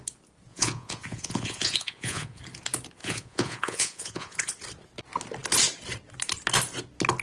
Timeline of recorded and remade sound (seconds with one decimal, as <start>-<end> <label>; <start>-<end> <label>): 0.0-0.5 recorded; 0.5-2.4 remade; 2.4-3.0 recorded; 3.0-4.5 remade; 4.5-7.2 recorded